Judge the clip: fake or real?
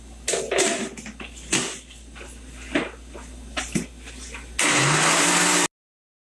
real